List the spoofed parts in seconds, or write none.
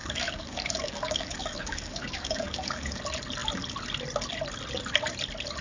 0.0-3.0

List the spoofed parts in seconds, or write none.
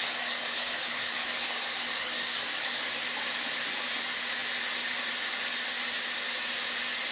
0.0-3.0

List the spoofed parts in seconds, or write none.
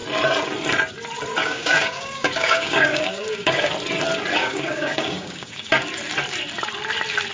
1.4-3.7; 4.4-5.7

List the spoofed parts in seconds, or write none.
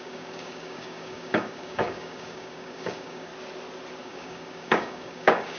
0.0-3.3; 4.0-5.6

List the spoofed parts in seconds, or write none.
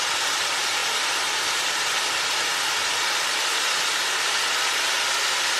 none